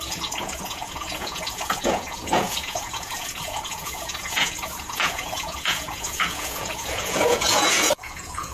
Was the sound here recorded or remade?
remade